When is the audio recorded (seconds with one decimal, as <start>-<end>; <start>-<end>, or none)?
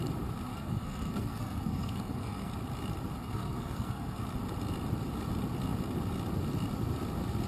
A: 0.0-0.5; 2.5-3.2; 4.2-7.5